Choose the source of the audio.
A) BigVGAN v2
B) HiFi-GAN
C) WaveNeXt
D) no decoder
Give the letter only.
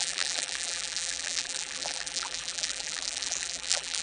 A